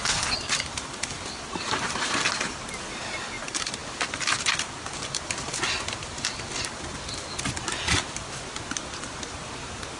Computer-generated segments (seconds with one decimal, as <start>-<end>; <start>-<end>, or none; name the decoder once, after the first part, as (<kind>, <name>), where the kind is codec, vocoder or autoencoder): none